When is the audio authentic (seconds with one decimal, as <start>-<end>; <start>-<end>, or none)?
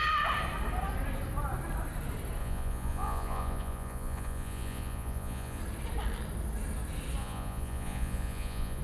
0.0-2.4; 5.6-7.2